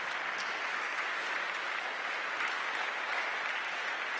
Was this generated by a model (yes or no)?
no